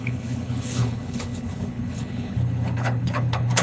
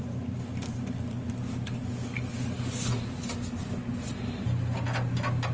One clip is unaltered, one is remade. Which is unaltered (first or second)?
second